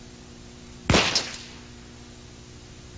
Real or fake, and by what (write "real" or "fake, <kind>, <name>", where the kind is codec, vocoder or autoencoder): real